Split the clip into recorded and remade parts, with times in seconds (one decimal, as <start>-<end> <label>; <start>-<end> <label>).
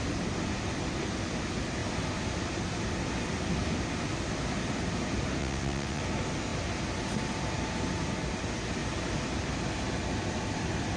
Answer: 0.0-5.4 recorded; 5.4-6.0 remade; 6.0-11.0 recorded